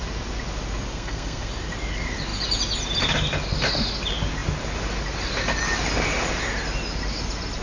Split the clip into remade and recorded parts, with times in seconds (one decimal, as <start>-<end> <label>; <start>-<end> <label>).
0.0-0.9 recorded; 0.9-1.5 remade; 1.5-7.6 recorded